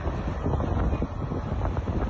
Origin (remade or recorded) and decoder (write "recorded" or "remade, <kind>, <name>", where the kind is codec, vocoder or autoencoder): recorded